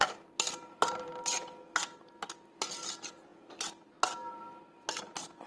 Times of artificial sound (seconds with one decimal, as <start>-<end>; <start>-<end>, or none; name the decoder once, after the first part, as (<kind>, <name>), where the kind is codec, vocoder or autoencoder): none